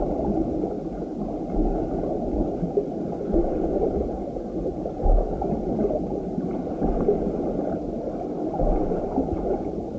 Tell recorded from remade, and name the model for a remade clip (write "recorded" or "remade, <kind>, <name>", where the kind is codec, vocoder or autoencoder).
recorded